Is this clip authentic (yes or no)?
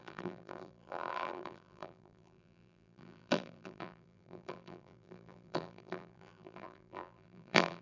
no